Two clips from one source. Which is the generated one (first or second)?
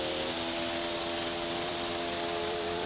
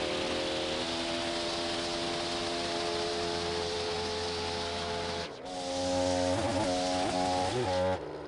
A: first